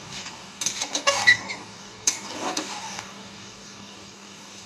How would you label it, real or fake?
fake